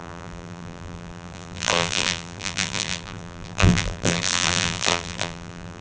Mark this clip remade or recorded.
remade